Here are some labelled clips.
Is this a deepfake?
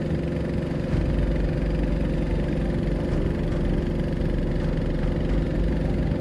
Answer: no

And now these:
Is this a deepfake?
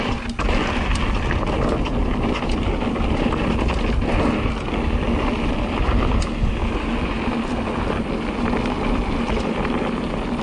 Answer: no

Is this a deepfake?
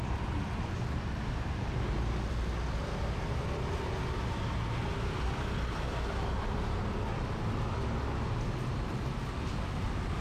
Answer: no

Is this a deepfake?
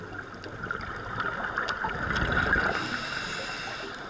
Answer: no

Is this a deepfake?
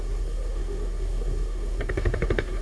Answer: yes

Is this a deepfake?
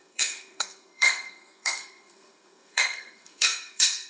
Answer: yes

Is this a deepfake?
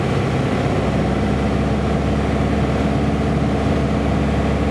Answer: no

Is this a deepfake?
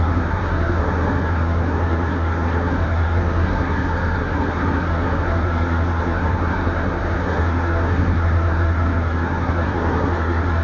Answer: yes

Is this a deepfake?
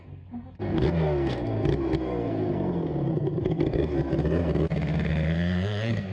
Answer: yes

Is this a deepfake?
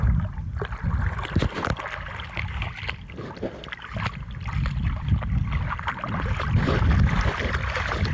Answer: no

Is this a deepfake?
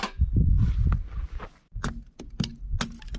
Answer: no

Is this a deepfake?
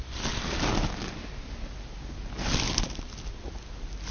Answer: no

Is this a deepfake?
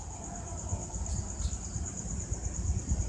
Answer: no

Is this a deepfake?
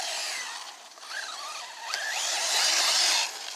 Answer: no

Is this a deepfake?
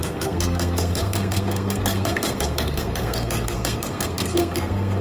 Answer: yes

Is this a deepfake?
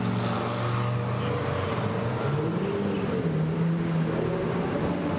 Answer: no